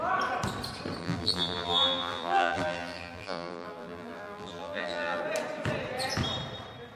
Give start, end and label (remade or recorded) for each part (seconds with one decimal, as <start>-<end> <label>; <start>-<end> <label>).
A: 0.0-1.0 recorded; 1.0-5.2 remade; 5.2-7.0 recorded